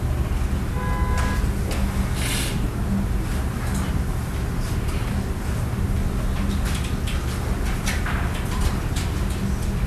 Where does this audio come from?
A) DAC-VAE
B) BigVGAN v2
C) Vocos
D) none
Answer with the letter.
D